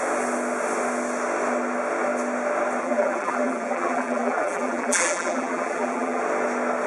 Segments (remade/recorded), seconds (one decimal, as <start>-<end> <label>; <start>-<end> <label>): 0.0-2.8 recorded; 2.8-6.2 remade; 6.2-6.9 recorded